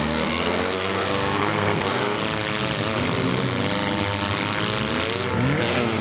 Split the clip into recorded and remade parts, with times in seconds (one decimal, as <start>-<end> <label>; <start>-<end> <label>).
0.0-2.0 remade; 2.0-5.6 recorded; 5.6-6.0 remade